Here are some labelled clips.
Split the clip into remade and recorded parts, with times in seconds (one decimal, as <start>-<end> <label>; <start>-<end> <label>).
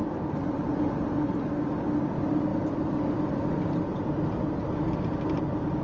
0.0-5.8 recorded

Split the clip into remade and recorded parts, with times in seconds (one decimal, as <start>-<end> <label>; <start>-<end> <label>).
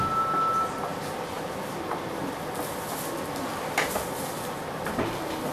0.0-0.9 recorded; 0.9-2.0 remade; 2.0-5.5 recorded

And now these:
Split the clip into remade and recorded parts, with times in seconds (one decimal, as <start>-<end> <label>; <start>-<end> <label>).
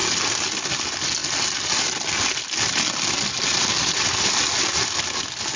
0.0-5.6 recorded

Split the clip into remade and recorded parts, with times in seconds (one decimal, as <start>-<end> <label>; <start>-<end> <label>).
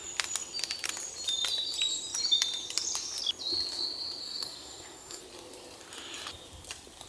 0.0-4.2 recorded; 4.2-5.2 remade; 5.2-7.1 recorded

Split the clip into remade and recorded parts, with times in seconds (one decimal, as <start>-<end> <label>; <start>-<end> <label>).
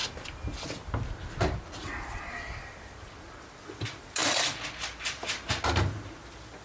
0.0-6.6 recorded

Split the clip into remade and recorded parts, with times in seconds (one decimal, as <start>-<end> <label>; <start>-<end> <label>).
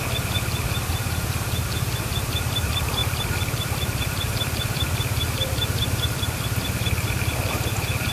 0.0-3.0 recorded; 3.0-7.5 remade; 7.5-8.1 recorded